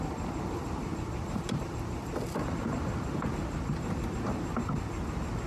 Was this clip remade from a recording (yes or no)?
no